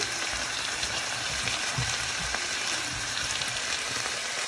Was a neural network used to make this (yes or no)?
yes